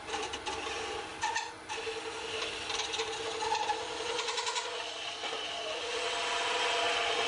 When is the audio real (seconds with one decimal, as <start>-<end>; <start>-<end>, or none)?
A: 1.1-3.8; 5.9-7.3